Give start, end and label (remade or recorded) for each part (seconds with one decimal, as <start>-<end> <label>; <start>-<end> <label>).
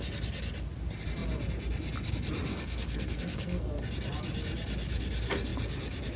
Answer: 0.0-2.5 recorded; 2.5-3.7 remade; 3.7-6.2 recorded